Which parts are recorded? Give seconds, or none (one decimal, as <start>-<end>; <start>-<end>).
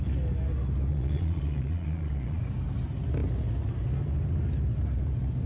0.0-0.9; 2.4-5.5